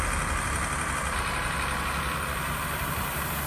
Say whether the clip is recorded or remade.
recorded